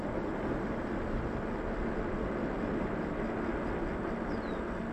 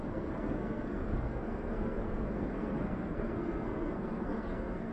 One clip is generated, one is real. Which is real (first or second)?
first